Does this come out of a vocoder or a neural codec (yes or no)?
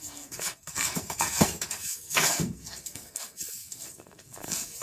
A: yes